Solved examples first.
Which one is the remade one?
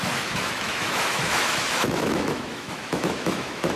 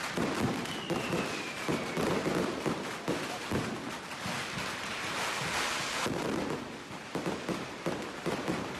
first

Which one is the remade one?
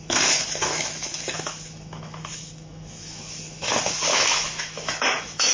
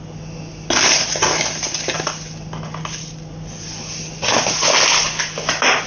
first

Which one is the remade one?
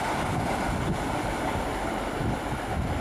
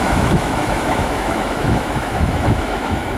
second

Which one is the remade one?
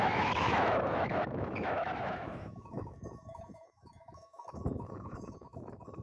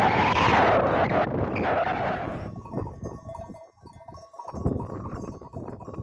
first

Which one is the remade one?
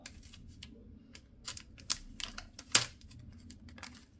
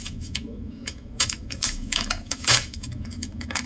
second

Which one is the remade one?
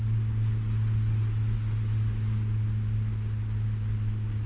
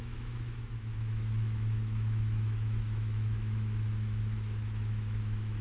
second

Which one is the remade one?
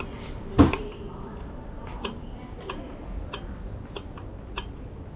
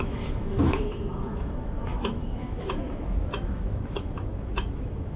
second